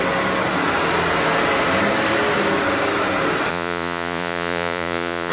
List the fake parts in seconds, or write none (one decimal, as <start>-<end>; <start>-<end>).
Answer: 3.5-5.3